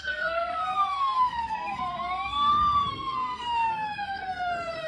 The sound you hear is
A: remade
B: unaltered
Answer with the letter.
A